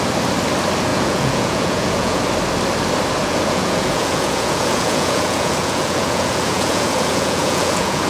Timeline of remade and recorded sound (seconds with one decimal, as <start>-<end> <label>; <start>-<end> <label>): 0.0-0.9 recorded; 0.9-2.2 remade; 2.2-3.2 recorded; 3.2-8.1 remade

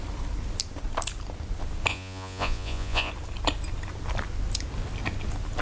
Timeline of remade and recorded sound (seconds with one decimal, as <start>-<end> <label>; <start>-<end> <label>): 0.0-1.9 recorded; 1.9-3.1 remade; 3.1-5.6 recorded

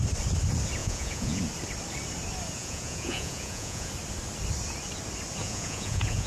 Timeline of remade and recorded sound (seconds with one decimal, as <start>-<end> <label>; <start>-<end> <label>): 0.0-0.8 recorded; 0.8-1.4 remade; 1.4-2.6 recorded; 2.6-3.9 remade; 3.9-5.4 recorded; 5.4-6.3 remade

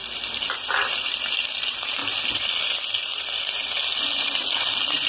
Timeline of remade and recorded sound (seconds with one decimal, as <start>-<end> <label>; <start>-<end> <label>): 0.0-5.1 recorded

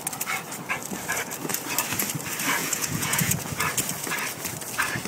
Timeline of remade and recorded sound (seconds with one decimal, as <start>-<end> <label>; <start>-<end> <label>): 0.0-2.6 recorded; 2.6-3.5 remade; 3.5-5.1 recorded